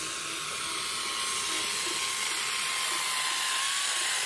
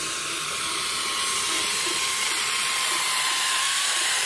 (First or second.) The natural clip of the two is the first